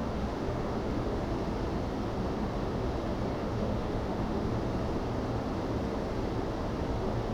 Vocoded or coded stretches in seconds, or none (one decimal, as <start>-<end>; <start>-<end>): 0.0-1.2; 3.4-4.5